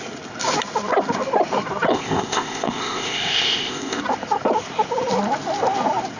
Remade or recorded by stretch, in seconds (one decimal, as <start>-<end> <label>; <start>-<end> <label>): 0.0-1.9 recorded; 1.9-4.0 remade; 4.0-6.2 recorded